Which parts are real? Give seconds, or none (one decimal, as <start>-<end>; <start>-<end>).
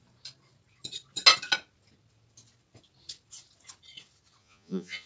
0.0-4.4